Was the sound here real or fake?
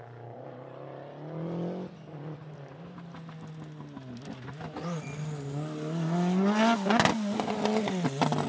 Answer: real